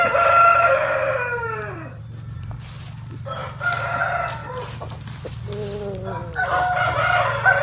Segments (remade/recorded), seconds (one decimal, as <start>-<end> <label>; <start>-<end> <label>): 0.0-0.5 recorded; 0.5-2.0 remade; 2.0-7.6 recorded